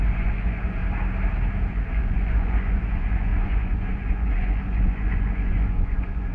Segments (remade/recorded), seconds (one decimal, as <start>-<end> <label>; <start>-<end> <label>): 0.0-0.8 remade; 0.8-1.7 recorded; 1.7-6.3 remade